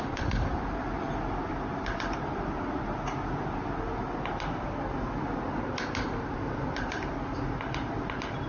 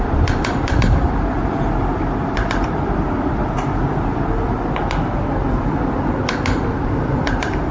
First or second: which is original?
first